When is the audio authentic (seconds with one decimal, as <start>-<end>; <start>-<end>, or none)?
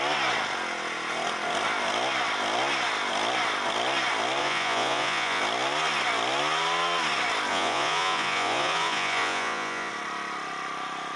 0.0-4.4; 5.4-7.5; 9.9-11.2